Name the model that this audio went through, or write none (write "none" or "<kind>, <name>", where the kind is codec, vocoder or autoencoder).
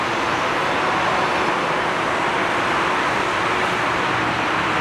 none